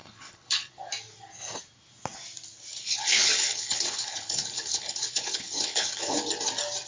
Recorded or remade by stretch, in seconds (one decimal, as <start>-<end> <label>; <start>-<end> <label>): 0.0-0.7 remade; 0.7-2.7 recorded; 2.7-6.2 remade; 6.2-6.9 recorded